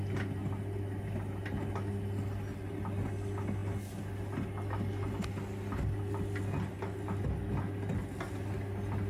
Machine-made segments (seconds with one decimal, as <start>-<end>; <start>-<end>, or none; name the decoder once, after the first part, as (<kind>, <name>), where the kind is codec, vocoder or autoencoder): none